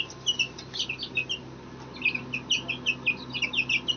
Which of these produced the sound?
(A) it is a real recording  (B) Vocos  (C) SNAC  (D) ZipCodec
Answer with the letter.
A